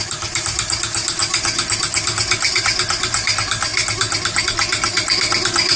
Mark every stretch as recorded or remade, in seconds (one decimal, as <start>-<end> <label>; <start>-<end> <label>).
0.0-5.8 recorded